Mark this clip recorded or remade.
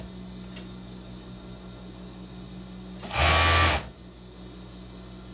recorded